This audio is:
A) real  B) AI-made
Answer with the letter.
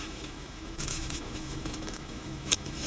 B